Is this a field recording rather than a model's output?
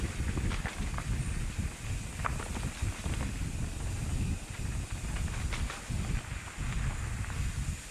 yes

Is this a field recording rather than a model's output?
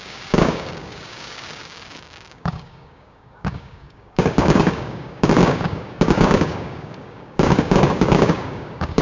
no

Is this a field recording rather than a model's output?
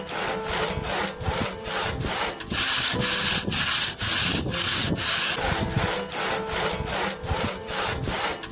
yes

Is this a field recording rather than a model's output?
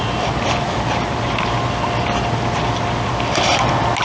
yes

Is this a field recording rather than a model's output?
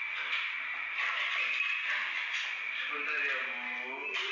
yes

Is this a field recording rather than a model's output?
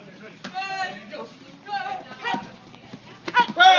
yes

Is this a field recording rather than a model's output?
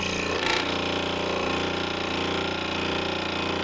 yes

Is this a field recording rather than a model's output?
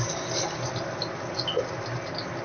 yes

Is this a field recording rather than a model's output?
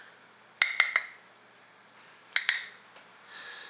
yes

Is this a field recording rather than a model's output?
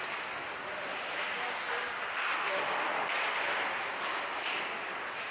yes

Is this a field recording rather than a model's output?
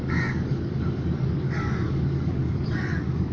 no